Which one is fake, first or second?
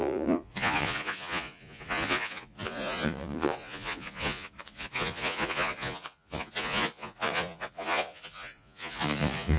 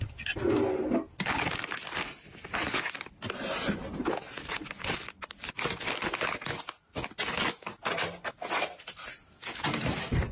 first